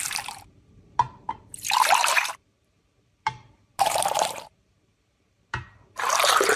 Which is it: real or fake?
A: fake